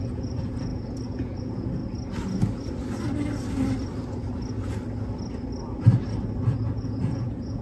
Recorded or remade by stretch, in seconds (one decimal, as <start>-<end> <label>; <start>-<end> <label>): 0.0-1.8 remade; 1.8-6.4 recorded; 6.4-7.6 remade